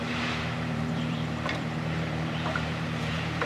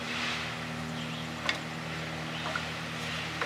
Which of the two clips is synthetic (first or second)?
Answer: first